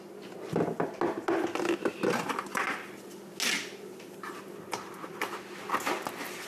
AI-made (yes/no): no